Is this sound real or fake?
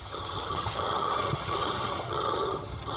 fake